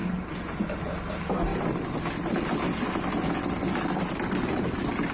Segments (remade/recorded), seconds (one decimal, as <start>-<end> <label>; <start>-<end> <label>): 0.0-5.1 recorded